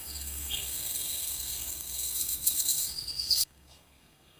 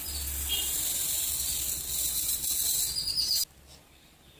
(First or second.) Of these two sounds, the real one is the second